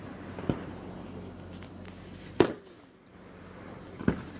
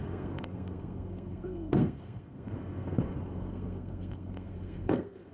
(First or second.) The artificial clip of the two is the second